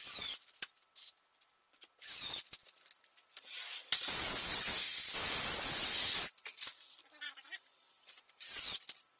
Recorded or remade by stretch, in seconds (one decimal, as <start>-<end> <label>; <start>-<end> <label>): 0.0-9.2 recorded

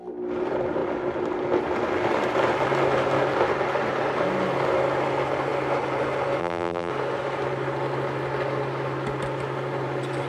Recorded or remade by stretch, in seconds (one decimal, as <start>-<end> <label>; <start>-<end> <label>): 0.0-6.4 recorded; 6.4-6.9 remade; 6.9-10.3 recorded

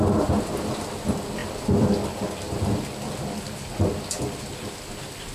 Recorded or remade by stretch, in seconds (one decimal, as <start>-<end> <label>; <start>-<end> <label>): 0.0-5.3 recorded

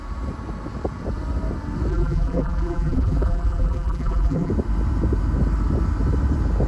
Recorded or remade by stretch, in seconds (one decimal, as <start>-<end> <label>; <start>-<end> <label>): 0.0-1.9 recorded; 1.9-4.5 remade; 4.5-6.7 recorded

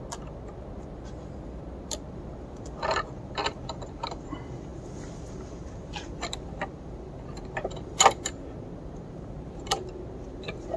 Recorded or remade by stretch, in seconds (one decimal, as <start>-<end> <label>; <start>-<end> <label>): 0.0-10.8 remade

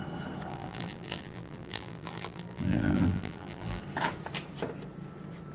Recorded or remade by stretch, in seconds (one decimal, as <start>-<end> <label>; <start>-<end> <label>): 0.0-0.5 recorded; 0.5-3.8 remade; 3.8-5.5 recorded

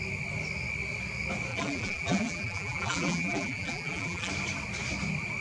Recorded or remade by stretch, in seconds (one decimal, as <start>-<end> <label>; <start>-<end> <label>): 0.0-1.5 recorded; 1.5-4.3 remade; 4.3-5.4 recorded